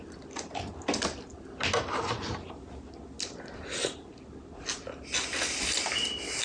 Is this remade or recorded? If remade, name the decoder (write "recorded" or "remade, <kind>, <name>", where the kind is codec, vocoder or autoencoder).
recorded